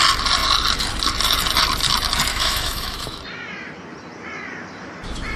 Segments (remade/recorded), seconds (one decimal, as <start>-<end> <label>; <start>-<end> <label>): 0.0-2.3 recorded; 2.3-3.2 remade; 3.2-5.4 recorded